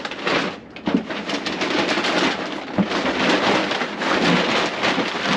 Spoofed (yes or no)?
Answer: no